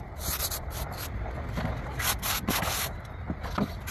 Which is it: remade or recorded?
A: recorded